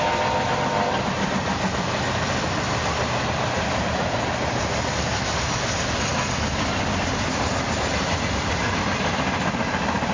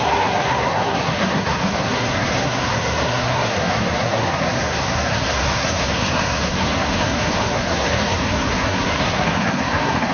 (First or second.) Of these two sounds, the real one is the first